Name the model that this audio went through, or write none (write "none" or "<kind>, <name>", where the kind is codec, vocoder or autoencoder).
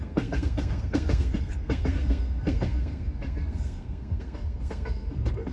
codec, SNAC